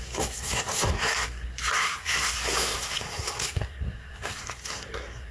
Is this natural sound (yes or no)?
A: no